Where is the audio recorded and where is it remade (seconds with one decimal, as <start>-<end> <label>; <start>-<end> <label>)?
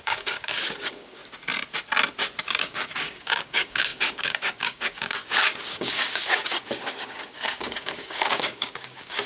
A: 0.0-1.2 remade; 1.2-2.5 recorded; 2.5-9.3 remade